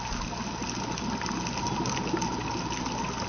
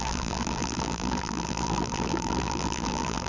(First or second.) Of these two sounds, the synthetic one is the second